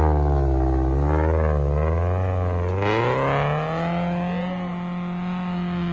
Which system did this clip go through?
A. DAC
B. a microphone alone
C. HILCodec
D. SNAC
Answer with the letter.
B